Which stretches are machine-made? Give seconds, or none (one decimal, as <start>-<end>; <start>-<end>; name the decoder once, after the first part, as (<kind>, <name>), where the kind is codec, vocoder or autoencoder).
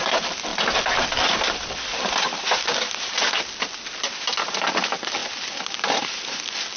none